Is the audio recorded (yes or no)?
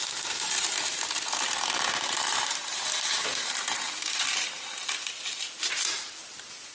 no